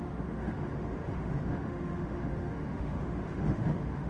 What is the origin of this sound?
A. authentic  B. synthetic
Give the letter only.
B